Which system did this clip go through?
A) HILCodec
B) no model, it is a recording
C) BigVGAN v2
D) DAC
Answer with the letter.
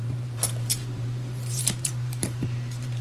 C